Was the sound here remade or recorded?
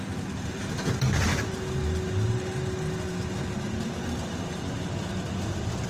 recorded